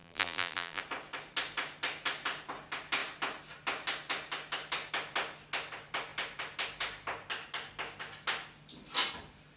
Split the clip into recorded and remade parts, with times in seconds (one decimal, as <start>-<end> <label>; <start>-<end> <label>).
0.0-0.8 remade; 0.8-9.6 recorded